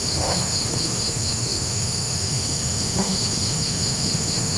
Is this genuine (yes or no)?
no